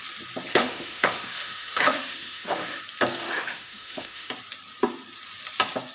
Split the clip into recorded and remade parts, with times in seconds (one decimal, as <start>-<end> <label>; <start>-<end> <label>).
0.0-0.5 recorded; 0.5-2.8 remade; 2.8-3.2 recorded; 3.2-4.3 remade; 4.3-5.9 recorded